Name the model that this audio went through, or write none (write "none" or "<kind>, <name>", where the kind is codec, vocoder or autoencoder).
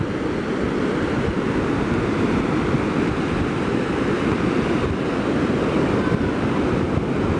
none